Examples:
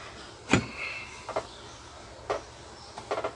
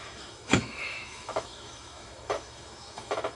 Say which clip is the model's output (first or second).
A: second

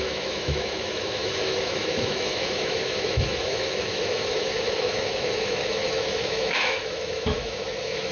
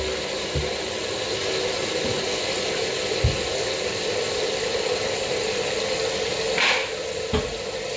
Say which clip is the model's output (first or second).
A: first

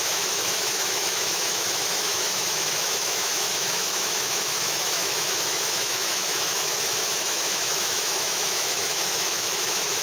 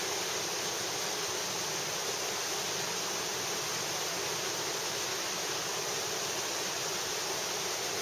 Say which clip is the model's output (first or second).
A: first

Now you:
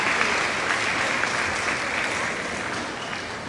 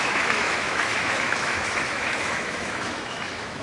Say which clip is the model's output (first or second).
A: second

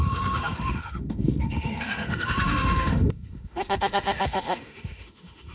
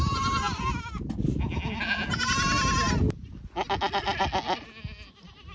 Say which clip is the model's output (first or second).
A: first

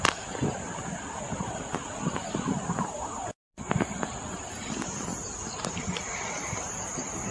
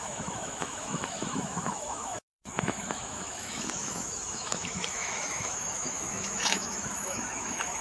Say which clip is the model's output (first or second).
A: second